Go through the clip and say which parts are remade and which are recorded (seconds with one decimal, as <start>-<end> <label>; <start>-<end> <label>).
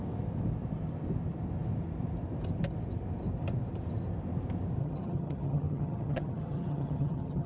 0.0-4.8 recorded; 4.8-7.5 remade